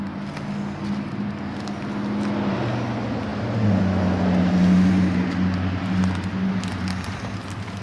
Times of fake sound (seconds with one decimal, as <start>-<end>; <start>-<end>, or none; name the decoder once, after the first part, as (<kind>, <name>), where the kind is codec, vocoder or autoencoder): none